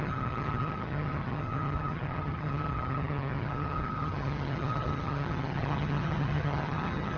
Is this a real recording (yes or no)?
no